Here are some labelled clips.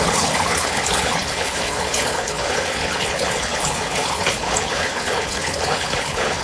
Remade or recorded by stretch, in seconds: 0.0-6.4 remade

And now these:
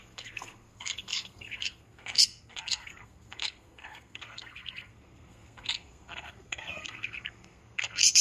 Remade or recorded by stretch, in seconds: 0.0-8.2 remade

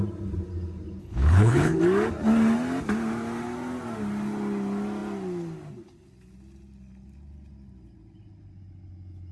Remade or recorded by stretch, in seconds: 0.0-1.0 recorded; 1.0-1.8 remade; 1.8-9.3 recorded

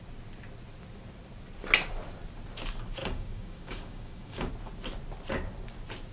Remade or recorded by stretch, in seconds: 0.0-3.0 recorded; 3.0-4.5 remade; 4.5-6.1 recorded

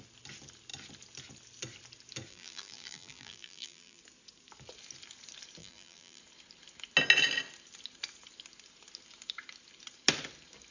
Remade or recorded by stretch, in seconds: 0.0-2.3 recorded; 2.3-4.0 remade; 4.0-5.6 recorded; 5.6-6.2 remade; 6.2-10.7 recorded